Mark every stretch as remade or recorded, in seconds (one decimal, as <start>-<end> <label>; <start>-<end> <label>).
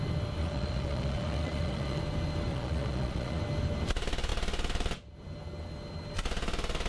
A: 0.0-0.4 recorded; 0.4-2.0 remade; 2.0-2.5 recorded; 2.5-3.4 remade; 3.4-6.9 recorded